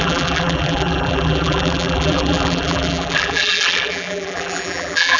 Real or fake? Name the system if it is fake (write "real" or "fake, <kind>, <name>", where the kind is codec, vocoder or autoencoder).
fake, vocoder, BigVGAN v2